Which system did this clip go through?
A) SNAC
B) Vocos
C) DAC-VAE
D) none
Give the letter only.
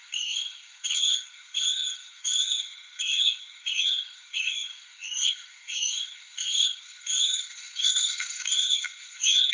A